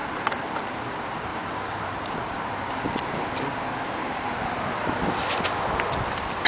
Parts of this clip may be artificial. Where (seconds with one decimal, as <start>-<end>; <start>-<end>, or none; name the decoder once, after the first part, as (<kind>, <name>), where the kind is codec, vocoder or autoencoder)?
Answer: 1.3-2.5 (vocoder, BigVGAN v2)